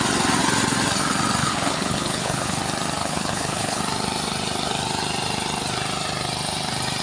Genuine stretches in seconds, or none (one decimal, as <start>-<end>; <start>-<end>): 0.0-1.4; 2.6-3.0; 3.8-7.0